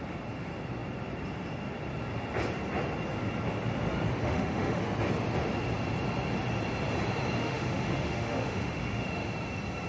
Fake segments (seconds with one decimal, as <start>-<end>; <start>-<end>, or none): 4.2-4.8; 7.4-9.3